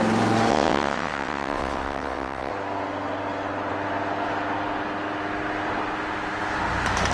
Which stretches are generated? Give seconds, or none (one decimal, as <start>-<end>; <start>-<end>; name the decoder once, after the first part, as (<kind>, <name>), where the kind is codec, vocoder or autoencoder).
0.5-2.5 (vocoder, WaveNeXt)